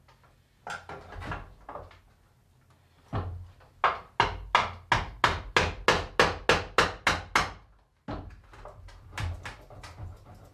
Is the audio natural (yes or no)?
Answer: yes